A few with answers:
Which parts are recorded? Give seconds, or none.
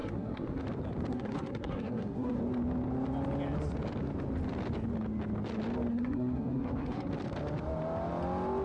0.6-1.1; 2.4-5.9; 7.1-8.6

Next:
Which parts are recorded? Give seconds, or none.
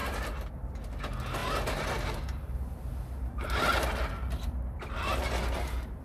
0.0-6.0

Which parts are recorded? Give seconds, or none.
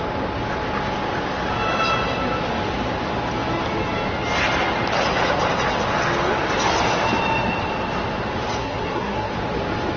0.0-8.6; 9.3-10.0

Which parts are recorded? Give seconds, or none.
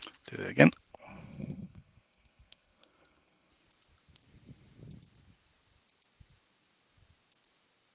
0.0-0.9; 3.5-7.9